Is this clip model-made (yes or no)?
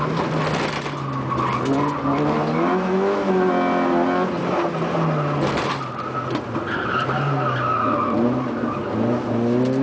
no